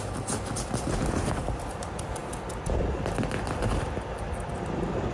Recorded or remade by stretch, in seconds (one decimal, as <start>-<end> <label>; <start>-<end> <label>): 0.0-5.1 recorded